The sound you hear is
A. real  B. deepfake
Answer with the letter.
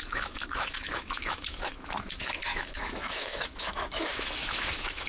B